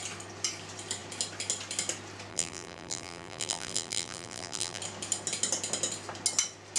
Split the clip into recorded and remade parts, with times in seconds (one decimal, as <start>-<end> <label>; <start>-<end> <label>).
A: 0.0-2.3 recorded; 2.3-4.8 remade; 4.8-6.8 recorded